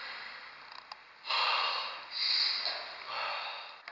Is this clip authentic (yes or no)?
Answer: yes